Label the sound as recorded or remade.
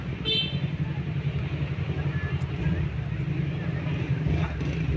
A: recorded